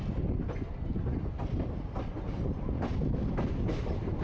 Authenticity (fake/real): real